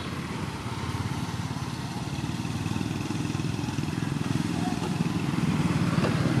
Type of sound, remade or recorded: remade